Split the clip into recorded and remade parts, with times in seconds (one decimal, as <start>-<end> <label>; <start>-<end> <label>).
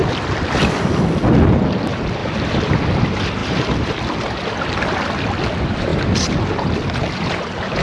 0.0-2.2 recorded; 2.2-2.7 remade; 2.7-3.4 recorded; 3.4-3.9 remade; 3.9-7.8 recorded